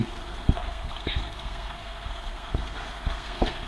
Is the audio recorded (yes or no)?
no